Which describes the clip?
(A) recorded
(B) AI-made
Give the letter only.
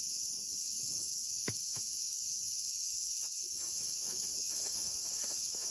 B